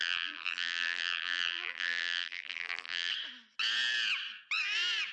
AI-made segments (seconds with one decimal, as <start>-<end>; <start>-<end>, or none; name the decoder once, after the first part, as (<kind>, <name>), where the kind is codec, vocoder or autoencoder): 0.0-3.1 (vocoder, BigVGAN v2)